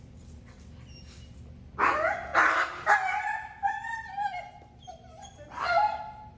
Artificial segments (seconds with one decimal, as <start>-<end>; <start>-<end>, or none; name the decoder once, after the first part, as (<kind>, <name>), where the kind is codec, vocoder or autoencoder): none

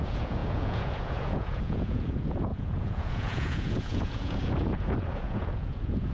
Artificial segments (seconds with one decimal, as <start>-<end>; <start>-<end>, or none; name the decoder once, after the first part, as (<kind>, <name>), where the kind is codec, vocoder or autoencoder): 0.0-6.1 (vocoder, Vocos)

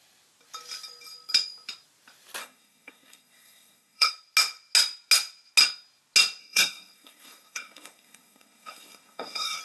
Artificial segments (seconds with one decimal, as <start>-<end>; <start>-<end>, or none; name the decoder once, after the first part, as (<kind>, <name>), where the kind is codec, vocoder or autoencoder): 2.4-4.1 (codec, SNAC); 6.4-9.6